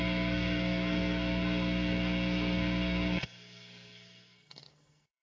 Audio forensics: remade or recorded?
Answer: remade